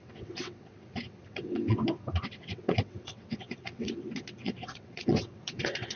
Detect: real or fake fake